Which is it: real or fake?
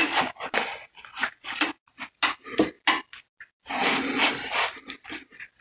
real